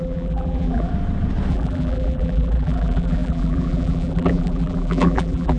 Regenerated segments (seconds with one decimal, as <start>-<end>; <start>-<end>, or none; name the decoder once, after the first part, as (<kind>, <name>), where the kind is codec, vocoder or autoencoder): 0.0-0.9 (vocoder, BigVGAN v2); 1.5-5.6